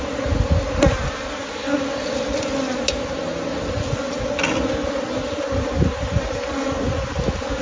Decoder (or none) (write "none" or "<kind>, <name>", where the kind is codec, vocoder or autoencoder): none